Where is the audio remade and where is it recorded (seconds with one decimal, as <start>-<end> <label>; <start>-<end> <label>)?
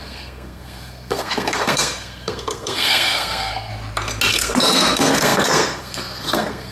0.0-3.7 remade; 3.7-4.3 recorded; 4.3-6.7 remade